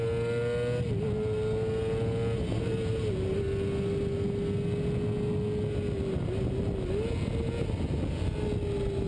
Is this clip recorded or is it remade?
recorded